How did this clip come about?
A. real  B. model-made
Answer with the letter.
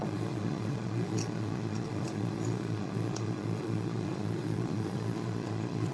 B